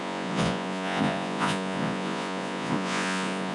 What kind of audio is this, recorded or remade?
remade